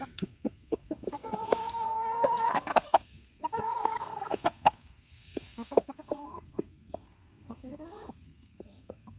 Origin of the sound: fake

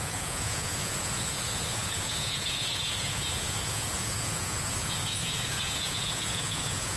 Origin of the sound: fake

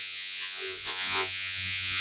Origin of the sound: fake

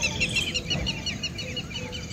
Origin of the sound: real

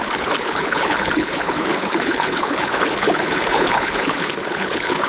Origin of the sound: fake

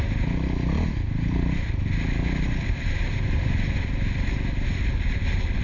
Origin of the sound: real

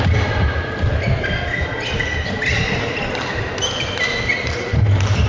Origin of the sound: real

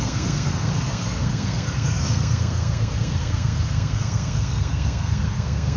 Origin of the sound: fake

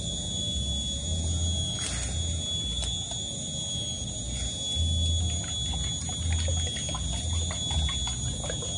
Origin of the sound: real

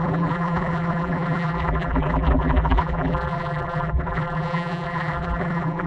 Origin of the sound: fake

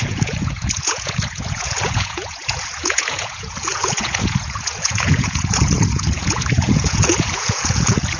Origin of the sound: fake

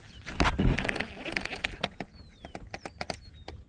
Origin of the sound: real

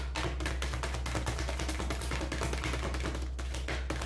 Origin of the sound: real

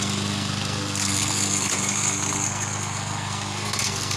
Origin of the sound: fake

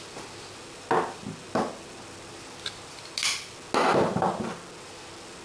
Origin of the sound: real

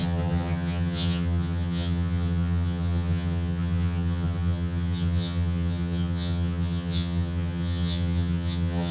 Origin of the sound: fake